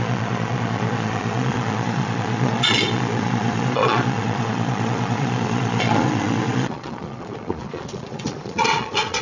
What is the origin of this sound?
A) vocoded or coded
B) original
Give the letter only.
A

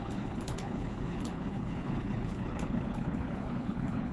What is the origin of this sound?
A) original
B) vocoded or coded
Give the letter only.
B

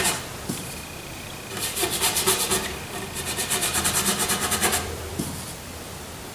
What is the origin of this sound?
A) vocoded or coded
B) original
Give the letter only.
A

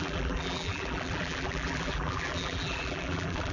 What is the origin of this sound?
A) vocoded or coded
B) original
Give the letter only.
A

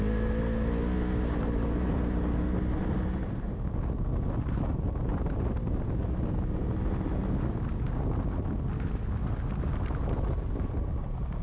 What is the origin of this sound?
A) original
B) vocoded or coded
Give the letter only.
A